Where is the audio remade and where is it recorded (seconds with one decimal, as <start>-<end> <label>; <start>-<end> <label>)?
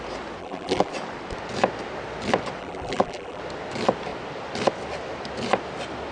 0.0-0.4 recorded; 0.4-0.9 remade; 0.9-2.6 recorded; 2.6-3.4 remade; 3.4-6.1 recorded